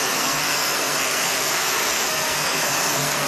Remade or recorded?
remade